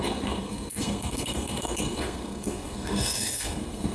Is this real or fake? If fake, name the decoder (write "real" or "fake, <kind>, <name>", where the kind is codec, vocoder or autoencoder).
fake, codec, SNAC